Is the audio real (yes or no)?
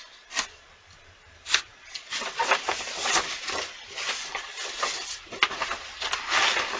yes